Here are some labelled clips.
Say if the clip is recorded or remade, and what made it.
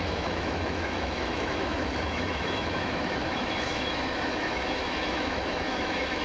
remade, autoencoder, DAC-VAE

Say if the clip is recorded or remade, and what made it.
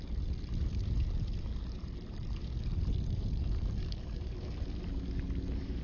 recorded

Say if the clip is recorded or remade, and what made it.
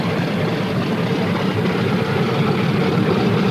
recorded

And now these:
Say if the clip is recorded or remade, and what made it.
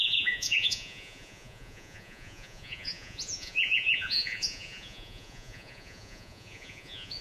remade, vocoder, Vocos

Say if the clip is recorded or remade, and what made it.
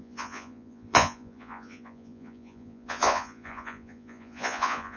remade, vocoder, Vocos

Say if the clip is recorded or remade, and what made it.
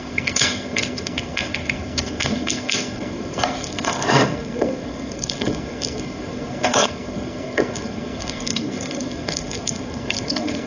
remade, codec, SNAC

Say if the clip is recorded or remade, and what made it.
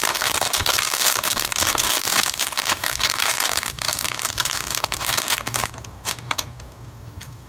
remade, codec, DAC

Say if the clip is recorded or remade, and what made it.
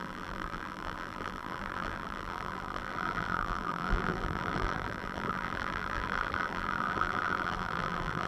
remade, vocoder, BigVGAN v2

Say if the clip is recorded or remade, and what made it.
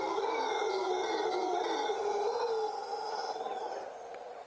recorded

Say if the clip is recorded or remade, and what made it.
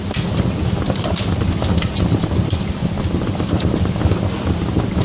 recorded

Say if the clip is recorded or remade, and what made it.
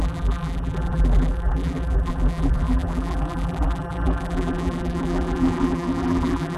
remade, vocoder, BigVGAN v2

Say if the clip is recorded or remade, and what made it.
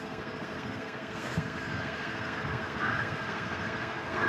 remade, codec, SNAC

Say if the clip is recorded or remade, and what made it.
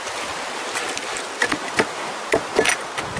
recorded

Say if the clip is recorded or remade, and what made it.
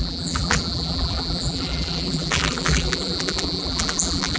remade, vocoder, BigVGAN v2